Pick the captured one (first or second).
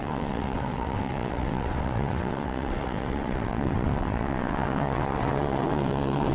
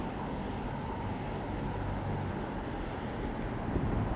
second